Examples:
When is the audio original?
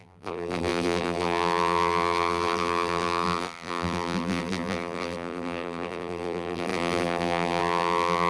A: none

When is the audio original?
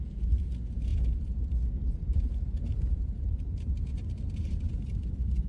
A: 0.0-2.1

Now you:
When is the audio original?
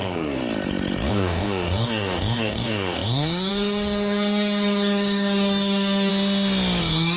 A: 0.4-1.1; 6.1-6.8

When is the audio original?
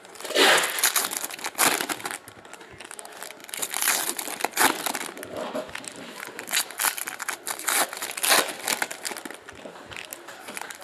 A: 0.0-3.4; 8.6-10.8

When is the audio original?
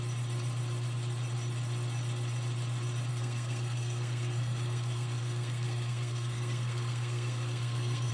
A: 0.0-3.1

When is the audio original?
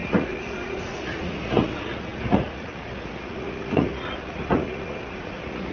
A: none